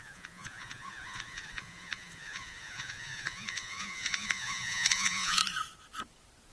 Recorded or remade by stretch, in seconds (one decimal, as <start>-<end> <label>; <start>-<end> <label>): 0.0-5.4 remade; 5.4-6.5 recorded